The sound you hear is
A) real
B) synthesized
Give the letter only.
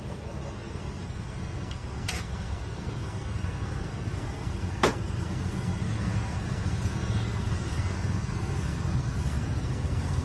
B